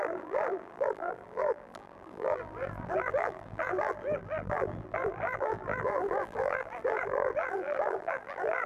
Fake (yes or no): yes